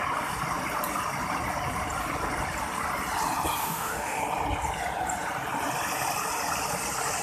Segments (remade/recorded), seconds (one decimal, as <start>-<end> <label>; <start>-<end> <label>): 0.0-3.6 recorded; 3.6-4.2 remade; 4.2-7.2 recorded